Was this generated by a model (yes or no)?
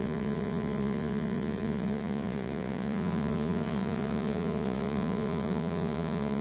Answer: yes